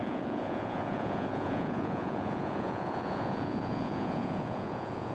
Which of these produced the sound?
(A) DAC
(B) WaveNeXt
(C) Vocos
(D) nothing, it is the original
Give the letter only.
C